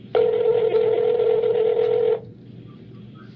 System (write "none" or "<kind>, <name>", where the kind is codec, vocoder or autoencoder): none